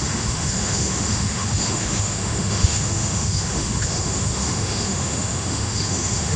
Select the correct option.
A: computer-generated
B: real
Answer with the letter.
A